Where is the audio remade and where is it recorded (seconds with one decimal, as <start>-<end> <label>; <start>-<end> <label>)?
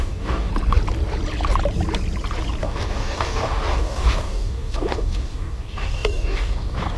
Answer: 0.0-0.5 remade; 0.5-2.6 recorded; 2.6-7.0 remade